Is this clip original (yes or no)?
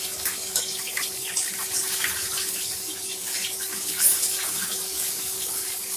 no